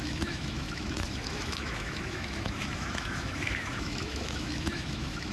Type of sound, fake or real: fake